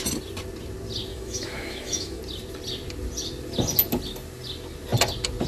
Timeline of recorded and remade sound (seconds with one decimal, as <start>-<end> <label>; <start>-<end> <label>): 0.0-1.1 recorded; 1.1-2.2 remade; 2.2-5.5 recorded